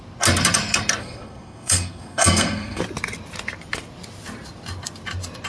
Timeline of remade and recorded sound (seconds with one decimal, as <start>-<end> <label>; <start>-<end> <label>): 0.0-1.0 recorded; 1.0-2.8 remade; 2.8-5.5 recorded